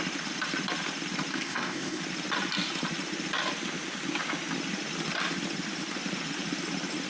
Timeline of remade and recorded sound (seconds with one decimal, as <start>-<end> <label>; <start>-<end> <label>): 0.0-1.3 recorded; 1.3-2.0 remade; 2.0-7.1 recorded